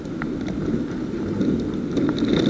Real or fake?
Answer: real